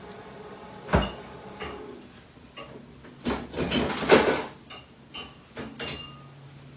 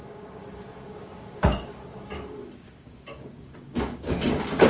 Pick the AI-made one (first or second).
second